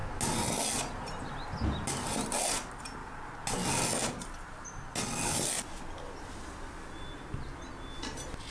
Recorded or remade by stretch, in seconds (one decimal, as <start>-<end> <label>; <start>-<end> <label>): 0.0-8.5 recorded